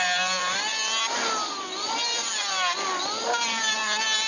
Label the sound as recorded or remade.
recorded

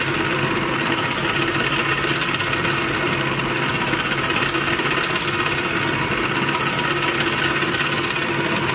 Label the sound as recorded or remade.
recorded